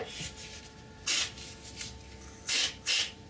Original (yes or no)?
yes